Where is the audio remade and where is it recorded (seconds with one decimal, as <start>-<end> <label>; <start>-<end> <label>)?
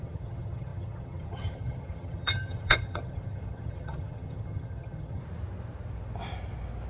0.0-5.2 remade; 5.2-6.9 recorded